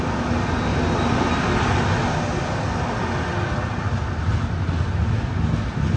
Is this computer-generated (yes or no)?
no